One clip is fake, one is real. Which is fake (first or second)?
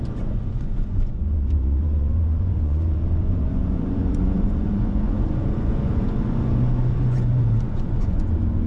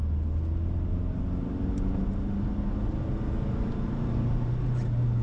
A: first